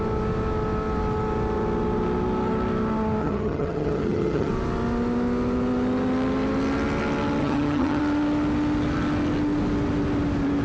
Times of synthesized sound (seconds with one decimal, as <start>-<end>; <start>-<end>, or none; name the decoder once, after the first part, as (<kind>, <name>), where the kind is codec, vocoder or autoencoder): 3.2-4.5 (vocoder, HiFi-GAN); 7.4-8.0